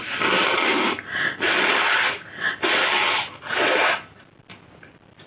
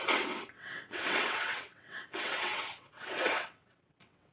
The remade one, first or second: second